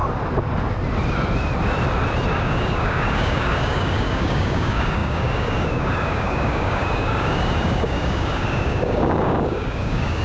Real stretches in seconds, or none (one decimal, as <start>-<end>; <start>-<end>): 0.0-2.3